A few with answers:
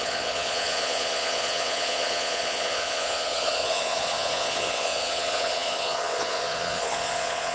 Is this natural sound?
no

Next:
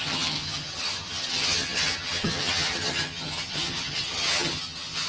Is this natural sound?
no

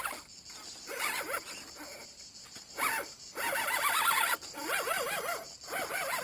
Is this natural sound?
yes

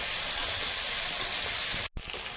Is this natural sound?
yes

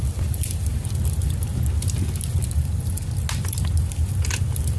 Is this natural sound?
yes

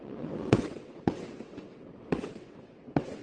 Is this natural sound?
no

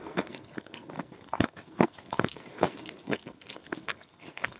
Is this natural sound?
no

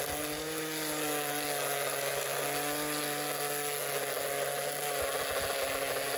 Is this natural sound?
yes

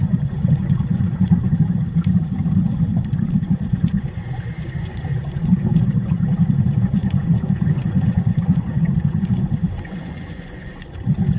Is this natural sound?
no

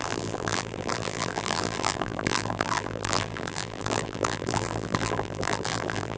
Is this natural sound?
no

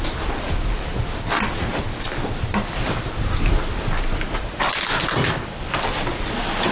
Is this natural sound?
no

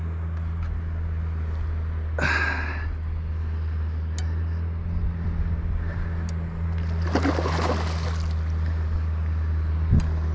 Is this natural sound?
yes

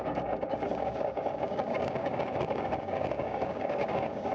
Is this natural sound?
no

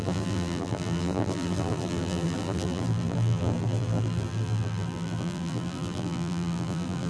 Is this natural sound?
no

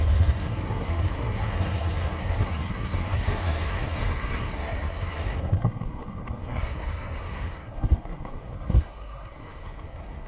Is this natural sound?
no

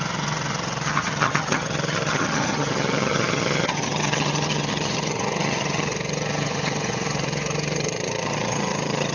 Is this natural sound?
no